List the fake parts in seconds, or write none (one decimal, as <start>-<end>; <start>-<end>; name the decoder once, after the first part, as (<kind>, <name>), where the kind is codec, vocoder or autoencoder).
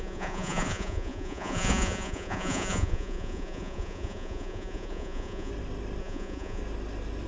0.0-5.5 (vocoder, Vocos); 6.0-6.6